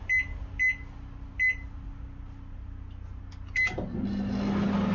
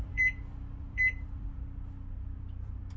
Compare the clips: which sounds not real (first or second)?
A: second